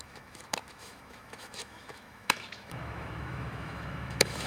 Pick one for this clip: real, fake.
fake